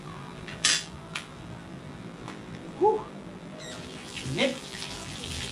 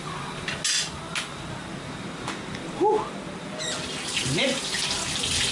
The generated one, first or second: first